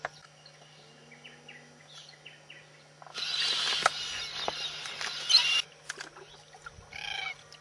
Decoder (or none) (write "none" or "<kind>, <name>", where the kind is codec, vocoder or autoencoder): none